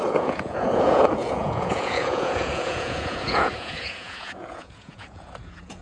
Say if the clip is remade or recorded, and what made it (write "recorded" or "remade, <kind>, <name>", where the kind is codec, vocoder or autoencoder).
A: remade, vocoder, Vocos